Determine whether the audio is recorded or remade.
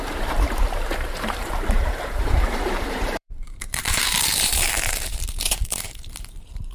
remade